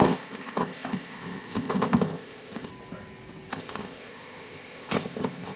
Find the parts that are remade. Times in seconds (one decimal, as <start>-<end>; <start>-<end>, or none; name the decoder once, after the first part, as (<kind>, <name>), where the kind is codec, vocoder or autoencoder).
0.0-2.7 (codec, ZipCodec); 3.5-5.6